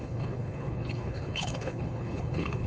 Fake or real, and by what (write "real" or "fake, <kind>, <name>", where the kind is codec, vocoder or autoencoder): fake, codec, HILCodec